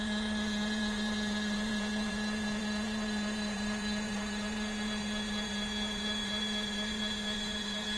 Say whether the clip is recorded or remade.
remade